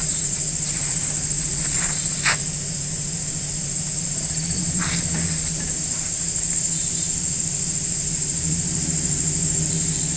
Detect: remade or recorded remade